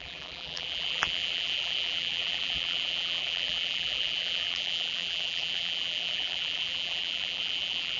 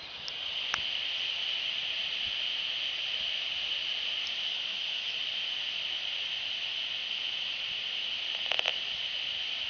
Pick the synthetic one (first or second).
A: first